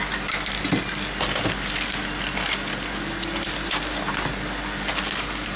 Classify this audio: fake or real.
real